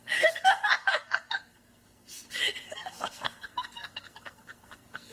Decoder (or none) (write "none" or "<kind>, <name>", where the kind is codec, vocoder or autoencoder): codec, SNAC